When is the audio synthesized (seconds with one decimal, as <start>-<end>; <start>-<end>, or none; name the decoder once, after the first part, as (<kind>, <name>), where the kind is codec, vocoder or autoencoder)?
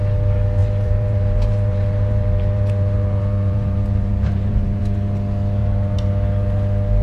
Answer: 0.6-4.8 (vocoder, BigVGAN v2); 5.6-6.1